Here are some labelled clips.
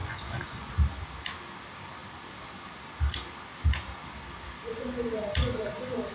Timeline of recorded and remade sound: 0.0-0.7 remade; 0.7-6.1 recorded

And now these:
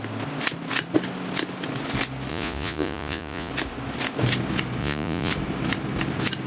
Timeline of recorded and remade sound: 0.0-2.3 recorded; 2.3-3.5 remade; 3.5-4.8 recorded; 4.8-5.3 remade; 5.3-6.5 recorded

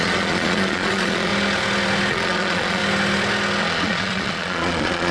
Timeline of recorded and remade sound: 0.0-1.3 remade; 1.3-2.1 recorded; 2.1-2.8 remade; 2.8-3.6 recorded; 3.6-5.1 remade

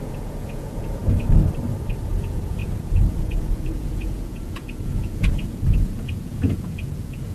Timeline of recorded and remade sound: 0.0-1.0 remade; 1.0-2.1 recorded; 2.1-7.3 remade

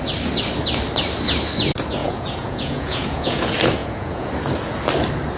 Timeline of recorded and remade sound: 0.0-2.0 recorded; 2.0-3.4 remade; 3.4-3.8 recorded; 3.8-4.3 remade; 4.3-5.4 recorded

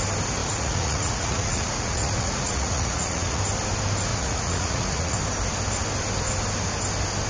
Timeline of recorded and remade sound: 0.0-0.4 recorded; 0.4-3.4 remade; 3.4-4.1 recorded; 4.1-5.2 remade; 5.2-7.3 recorded

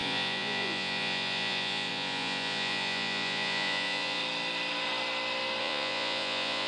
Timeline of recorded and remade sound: 0.0-4.2 remade; 4.2-5.6 recorded; 5.6-6.7 remade